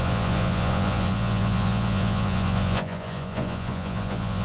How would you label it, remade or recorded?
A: remade